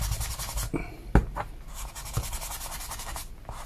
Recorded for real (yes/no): yes